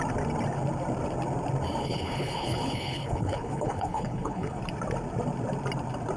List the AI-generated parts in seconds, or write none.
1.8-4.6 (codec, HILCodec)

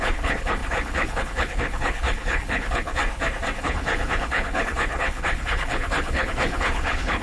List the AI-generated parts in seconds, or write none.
0.0-3.0 (codec, HILCodec); 3.6-7.2

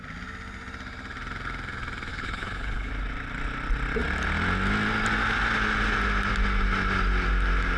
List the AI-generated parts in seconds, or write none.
2.1-2.9 (codec, HILCodec)

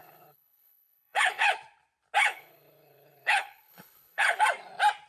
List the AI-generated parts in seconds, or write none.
0.0-1.5 (codec, HILCodec); 2.2-4.4

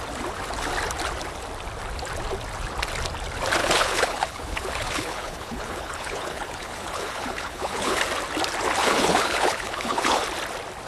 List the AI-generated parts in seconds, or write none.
3.6-8.0 (codec, HILCodec); 8.8-10.2

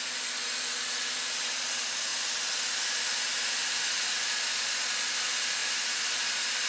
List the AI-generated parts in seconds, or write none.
none

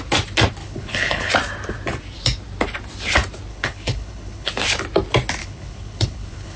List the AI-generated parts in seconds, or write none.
0.6-1.3 (codec, HILCodec); 3.5-4.5; 5.4-6.6